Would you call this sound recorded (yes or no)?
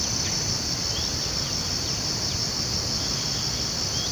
yes